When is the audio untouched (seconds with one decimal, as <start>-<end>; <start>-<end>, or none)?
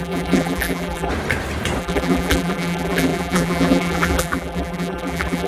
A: 1.1-1.8